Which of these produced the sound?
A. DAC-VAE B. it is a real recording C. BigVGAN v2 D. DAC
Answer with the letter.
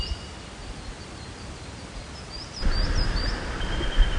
B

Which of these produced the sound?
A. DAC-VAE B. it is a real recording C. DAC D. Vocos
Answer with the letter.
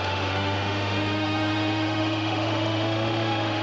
A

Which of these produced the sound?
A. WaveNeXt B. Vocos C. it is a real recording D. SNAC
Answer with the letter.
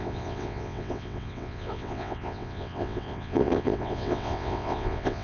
A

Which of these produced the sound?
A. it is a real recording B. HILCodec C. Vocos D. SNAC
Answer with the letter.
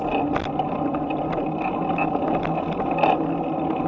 A